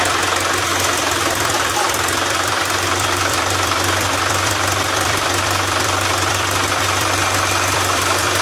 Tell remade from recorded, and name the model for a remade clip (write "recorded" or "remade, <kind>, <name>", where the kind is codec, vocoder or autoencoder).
remade, vocoder, BigVGAN v2